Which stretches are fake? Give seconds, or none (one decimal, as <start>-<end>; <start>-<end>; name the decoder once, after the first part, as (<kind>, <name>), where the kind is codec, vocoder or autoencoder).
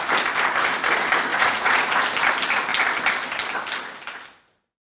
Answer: 1.3-2.0 (vocoder, Vocos)